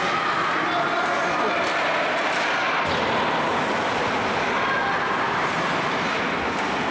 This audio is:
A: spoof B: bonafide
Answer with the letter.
B